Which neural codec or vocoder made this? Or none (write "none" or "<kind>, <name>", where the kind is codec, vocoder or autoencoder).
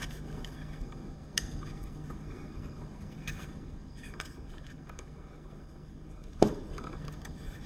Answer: codec, SNAC